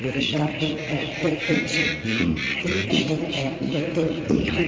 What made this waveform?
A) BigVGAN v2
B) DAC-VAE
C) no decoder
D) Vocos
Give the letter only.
D